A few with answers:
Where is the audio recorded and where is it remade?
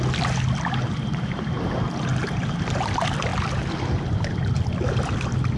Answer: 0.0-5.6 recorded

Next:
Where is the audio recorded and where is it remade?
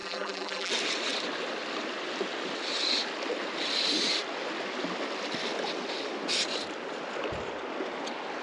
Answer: 0.0-0.7 remade; 0.7-8.4 recorded